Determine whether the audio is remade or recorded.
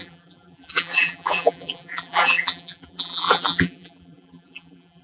remade